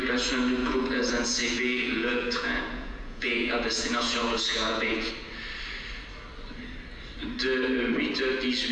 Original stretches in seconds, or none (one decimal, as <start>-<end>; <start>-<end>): 0.0-0.6; 5.1-8.7